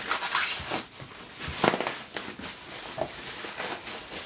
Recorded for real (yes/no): yes